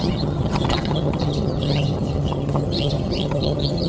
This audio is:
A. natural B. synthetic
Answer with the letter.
B